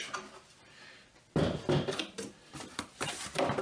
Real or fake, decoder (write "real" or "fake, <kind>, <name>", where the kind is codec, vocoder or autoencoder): fake, vocoder, BigVGAN v2